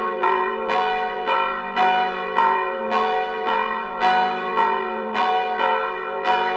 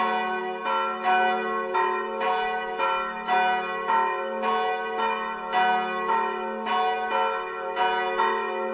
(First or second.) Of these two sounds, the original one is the second